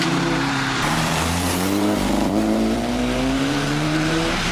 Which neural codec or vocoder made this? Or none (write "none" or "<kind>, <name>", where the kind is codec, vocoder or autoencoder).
vocoder, BigVGAN v2